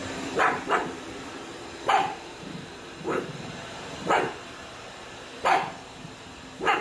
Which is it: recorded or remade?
remade